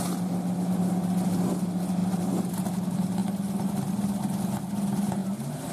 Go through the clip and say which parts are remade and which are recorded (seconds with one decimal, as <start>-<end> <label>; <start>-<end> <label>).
0.0-2.0 recorded; 2.0-2.5 remade; 2.5-5.7 recorded